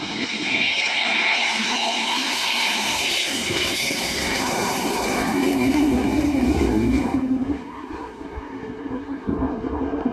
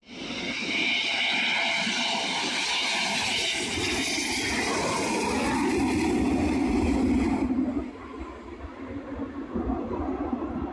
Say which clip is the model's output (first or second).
first